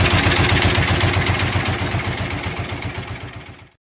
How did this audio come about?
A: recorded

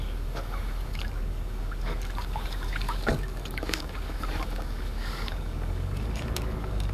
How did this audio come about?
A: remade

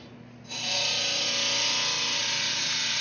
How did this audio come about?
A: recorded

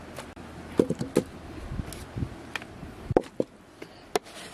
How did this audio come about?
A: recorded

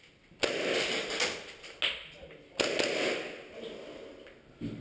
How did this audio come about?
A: recorded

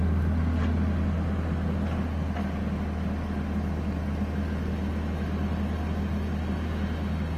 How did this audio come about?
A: recorded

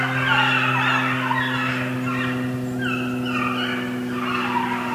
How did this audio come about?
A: recorded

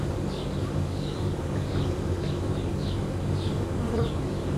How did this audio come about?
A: remade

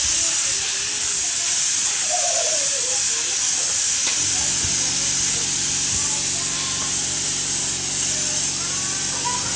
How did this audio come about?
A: recorded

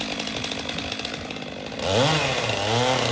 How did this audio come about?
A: recorded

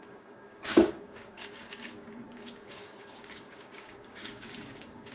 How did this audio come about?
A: remade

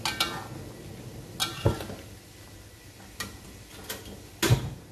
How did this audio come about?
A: recorded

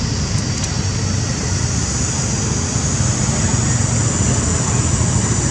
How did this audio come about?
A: recorded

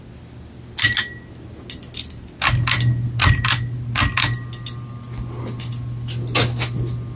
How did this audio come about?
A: recorded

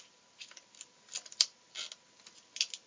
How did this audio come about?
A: recorded